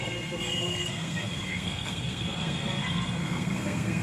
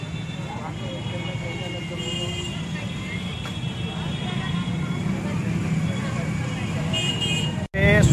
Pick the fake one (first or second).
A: first